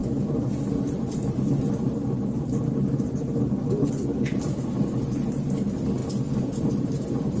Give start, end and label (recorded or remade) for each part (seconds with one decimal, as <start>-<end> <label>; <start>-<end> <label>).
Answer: 0.0-7.4 recorded